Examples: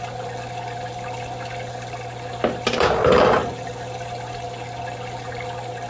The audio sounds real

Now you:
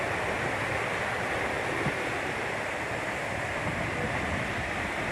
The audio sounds real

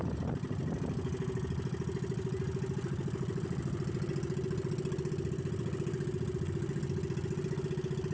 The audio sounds real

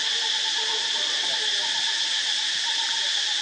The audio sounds real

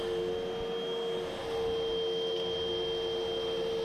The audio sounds real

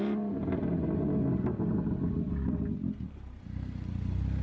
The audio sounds real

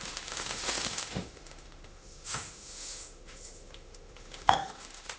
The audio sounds fake